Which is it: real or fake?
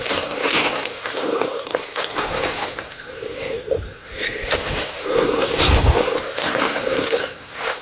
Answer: fake